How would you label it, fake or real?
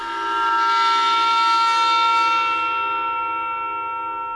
real